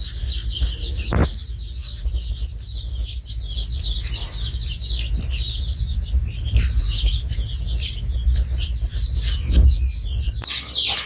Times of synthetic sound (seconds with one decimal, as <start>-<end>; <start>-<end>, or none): none